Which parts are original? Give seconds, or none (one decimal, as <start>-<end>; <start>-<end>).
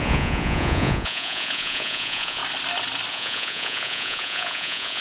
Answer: 2.4-3.1